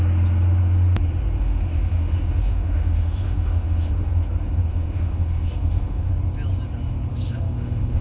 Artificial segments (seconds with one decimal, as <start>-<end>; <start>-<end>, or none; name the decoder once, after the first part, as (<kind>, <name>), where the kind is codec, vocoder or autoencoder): 1.4-4.1 (autoencoder, DAC-VAE); 4.7-6.1; 7.1-8.0